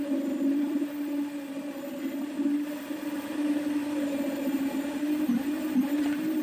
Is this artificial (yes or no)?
yes